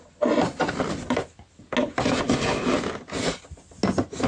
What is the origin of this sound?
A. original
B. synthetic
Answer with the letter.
A